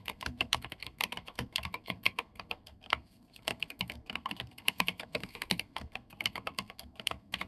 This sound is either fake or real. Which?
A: fake